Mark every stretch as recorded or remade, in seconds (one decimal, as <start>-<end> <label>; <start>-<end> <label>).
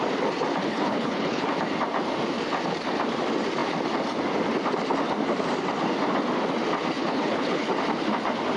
0.0-0.6 recorded; 0.6-1.5 remade; 1.5-7.0 recorded; 7.0-7.7 remade; 7.7-8.6 recorded